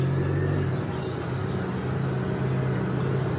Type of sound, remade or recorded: recorded